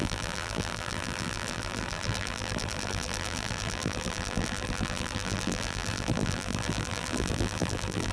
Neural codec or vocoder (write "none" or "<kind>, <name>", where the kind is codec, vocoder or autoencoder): vocoder, BigVGAN v2